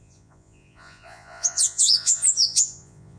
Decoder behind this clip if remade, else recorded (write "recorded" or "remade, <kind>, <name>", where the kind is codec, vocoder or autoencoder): remade, vocoder, Vocos